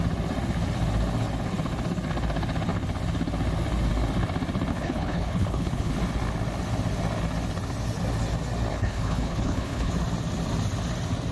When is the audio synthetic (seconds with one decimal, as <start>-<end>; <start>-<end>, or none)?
4.7-5.9; 8.7-9.9